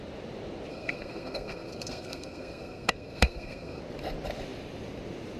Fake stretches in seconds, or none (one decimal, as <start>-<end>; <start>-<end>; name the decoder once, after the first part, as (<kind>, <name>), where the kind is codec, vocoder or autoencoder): 0.7-3.8 (codec, SNAC)